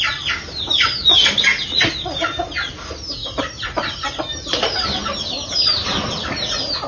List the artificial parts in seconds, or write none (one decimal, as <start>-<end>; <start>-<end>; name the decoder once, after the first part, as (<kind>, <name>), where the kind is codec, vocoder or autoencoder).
3.2-6.9 (vocoder, BigVGAN v2)